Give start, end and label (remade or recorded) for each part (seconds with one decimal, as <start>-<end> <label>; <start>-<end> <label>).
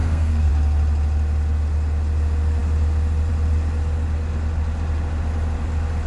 0.0-0.5 remade; 0.5-6.1 recorded